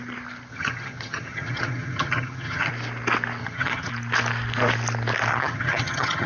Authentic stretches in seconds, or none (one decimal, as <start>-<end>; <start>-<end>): 0.0-0.5; 2.7-3.4; 3.9-5.3